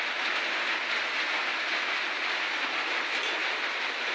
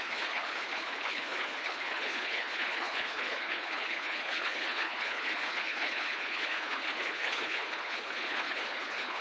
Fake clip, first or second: second